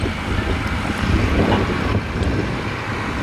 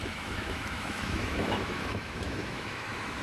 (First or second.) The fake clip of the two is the second